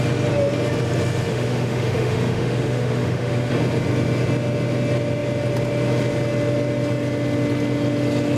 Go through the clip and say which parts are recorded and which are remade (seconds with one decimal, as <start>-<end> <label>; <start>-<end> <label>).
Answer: 0.0-1.3 recorded; 1.3-3.5 remade; 3.5-8.4 recorded